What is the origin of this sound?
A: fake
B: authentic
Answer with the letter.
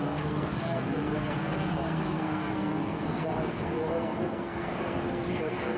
A